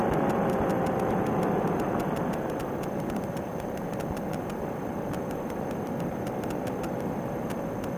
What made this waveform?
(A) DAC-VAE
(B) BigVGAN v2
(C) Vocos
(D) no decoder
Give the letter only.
B